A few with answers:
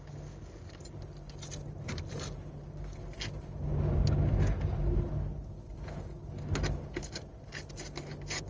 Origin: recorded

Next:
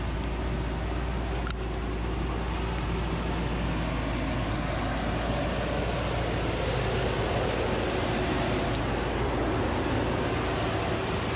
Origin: recorded